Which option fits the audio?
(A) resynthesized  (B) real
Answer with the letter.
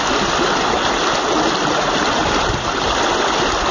B